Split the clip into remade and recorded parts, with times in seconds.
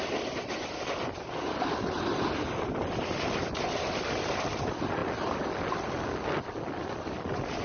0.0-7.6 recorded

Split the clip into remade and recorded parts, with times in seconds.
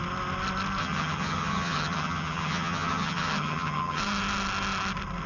0.0-0.8 recorded; 0.8-4.0 remade; 4.0-5.3 recorded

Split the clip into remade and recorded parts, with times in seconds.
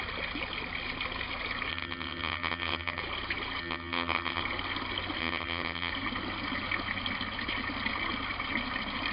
0.0-1.7 recorded; 1.7-3.0 remade; 3.0-3.6 recorded; 3.6-4.4 remade; 4.4-5.2 recorded; 5.2-5.9 remade; 5.9-9.1 recorded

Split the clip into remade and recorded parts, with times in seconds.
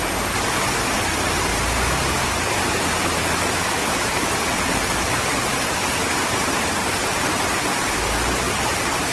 0.0-1.5 remade; 1.5-2.2 recorded; 2.2-9.1 remade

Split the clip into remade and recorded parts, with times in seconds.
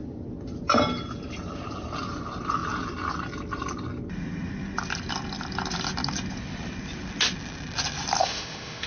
0.0-8.2 recorded; 8.2-8.9 remade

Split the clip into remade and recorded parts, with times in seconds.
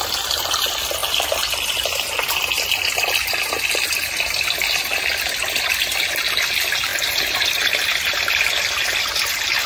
0.0-9.7 recorded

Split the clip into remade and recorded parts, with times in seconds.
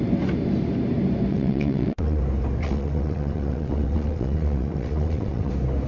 0.0-1.3 recorded; 1.3-2.2 remade; 2.2-2.6 recorded; 2.6-5.5 remade; 5.5-5.9 recorded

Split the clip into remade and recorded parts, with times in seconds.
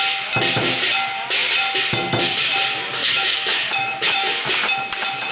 0.0-3.0 recorded; 3.0-4.5 remade; 4.5-5.3 recorded